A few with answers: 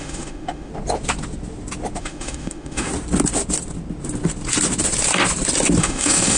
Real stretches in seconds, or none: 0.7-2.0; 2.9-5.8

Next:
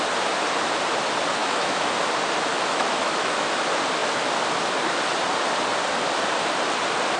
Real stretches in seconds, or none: 0.0-1.4; 1.9-2.5; 3.5-7.2

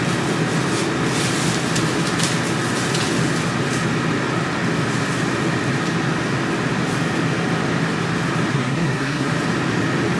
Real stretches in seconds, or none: 0.0-8.5; 9.3-10.2

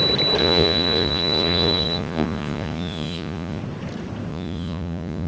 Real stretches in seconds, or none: 0.0-0.4; 3.6-4.3